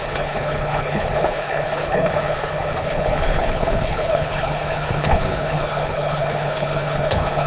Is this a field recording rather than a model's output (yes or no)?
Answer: no